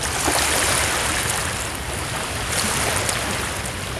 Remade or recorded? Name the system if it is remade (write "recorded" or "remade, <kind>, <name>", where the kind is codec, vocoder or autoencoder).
recorded